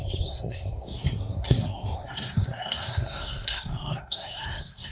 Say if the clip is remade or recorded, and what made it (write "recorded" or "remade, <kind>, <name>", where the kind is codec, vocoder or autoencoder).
remade, codec, SNAC